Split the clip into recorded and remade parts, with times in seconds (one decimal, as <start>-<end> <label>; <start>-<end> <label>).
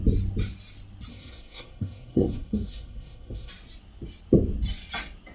0.0-1.1 recorded; 1.1-3.5 remade; 3.5-5.3 recorded